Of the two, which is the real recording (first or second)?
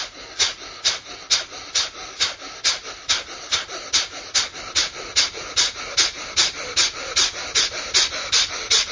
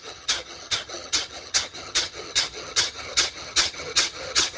first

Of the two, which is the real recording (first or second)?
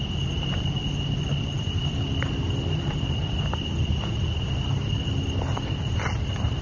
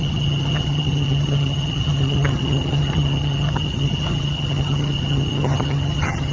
first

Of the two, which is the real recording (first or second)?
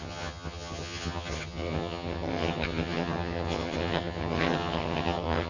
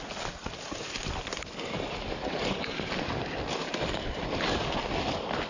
second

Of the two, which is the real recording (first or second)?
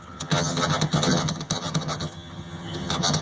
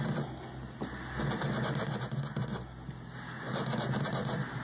second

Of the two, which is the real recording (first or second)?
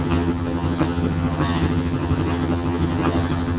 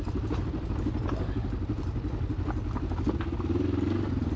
second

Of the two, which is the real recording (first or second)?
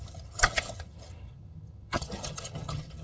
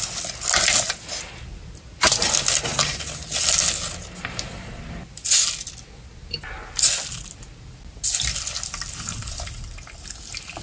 second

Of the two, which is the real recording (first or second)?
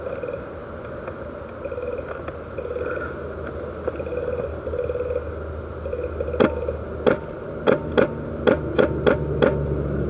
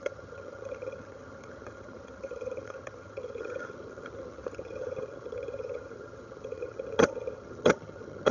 first